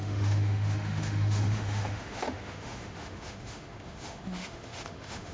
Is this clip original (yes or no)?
no